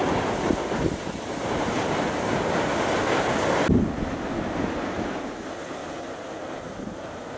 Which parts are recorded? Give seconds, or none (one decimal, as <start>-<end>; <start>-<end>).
0.0-4.2; 5.8-6.9